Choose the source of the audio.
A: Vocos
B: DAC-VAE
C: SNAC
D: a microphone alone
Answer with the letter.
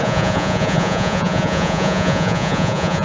A